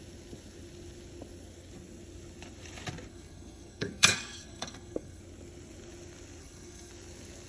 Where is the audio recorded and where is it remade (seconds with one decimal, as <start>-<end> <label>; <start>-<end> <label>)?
0.0-3.1 recorded; 3.1-5.2 remade; 5.2-6.4 recorded; 6.4-6.9 remade; 6.9-7.5 recorded